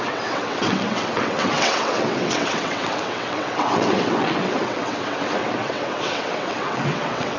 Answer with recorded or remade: remade